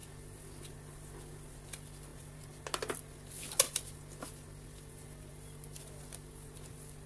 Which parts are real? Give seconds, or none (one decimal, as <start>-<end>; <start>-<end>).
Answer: 0.0-7.1